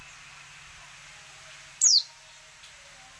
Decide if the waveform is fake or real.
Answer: real